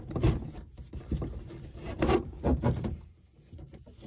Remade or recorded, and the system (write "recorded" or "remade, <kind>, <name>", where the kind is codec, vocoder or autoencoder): remade, vocoder, BigVGAN v2